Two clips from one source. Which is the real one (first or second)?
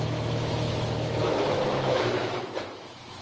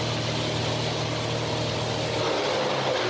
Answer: second